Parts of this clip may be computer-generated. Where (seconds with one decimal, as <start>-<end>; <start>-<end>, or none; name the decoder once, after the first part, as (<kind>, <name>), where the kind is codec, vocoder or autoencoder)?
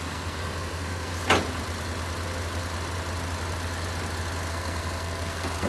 0.0-1.1 (codec, SNAC); 4.5-5.7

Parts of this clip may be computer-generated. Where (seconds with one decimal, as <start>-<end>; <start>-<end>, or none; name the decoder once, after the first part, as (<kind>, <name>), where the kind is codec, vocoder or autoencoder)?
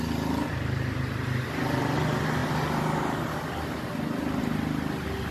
none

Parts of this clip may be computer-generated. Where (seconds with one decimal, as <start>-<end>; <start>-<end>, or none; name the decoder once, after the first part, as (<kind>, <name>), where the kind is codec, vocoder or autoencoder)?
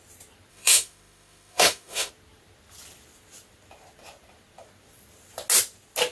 0.5-2.1 (autoencoder, DAC-VAE)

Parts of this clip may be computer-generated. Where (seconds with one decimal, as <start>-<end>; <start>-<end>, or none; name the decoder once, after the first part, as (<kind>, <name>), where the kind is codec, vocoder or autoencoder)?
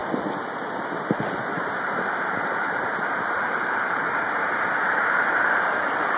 1.2-6.2 (vocoder, BigVGAN v2)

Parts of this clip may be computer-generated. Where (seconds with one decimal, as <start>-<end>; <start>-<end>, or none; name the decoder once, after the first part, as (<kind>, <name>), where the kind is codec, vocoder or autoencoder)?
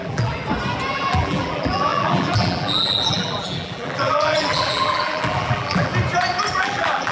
0.0-0.4 (vocoder, BigVGAN v2); 0.9-5.9; 6.5-7.1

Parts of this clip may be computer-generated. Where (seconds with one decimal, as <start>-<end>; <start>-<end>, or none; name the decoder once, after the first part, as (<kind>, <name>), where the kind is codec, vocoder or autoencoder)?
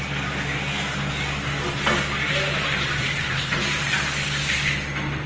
3.0-3.6 (vocoder, Vocos)